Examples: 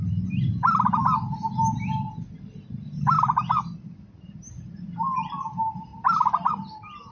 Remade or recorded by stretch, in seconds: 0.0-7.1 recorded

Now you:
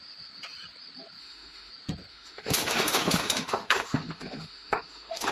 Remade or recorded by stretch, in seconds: 0.0-1.2 recorded; 1.2-1.7 remade; 1.7-2.1 recorded; 2.1-5.3 remade

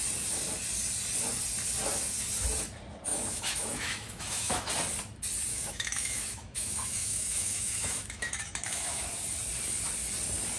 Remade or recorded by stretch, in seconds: 0.0-3.1 recorded; 3.1-4.7 remade; 4.7-5.5 recorded; 5.5-9.1 remade; 9.1-10.6 recorded

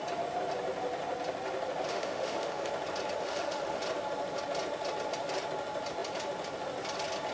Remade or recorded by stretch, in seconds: 0.0-1.9 recorded; 1.9-2.7 remade; 2.7-3.2 recorded; 3.2-3.8 remade; 3.8-7.3 recorded

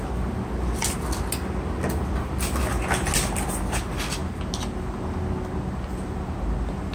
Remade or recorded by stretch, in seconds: 0.0-6.9 recorded